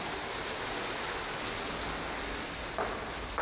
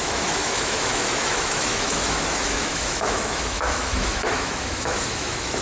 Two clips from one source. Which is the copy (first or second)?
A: second